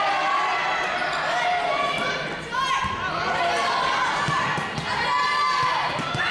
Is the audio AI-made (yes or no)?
no